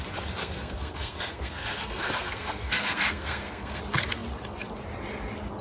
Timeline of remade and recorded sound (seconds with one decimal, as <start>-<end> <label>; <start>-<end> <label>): 0.0-0.4 recorded; 0.4-3.8 remade; 3.8-5.6 recorded